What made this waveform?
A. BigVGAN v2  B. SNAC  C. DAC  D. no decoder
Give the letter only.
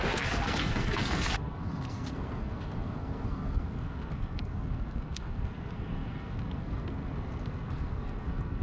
B